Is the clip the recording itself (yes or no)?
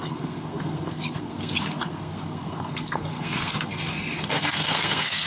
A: no